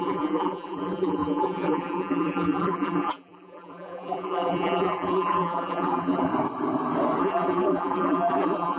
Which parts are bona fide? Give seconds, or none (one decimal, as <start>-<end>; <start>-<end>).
6.3-7.2